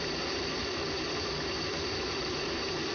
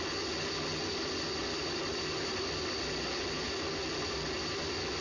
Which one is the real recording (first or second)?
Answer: second